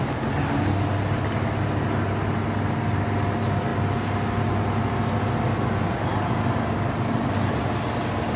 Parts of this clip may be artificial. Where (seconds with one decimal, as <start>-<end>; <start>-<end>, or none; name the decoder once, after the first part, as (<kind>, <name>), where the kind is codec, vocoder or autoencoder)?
none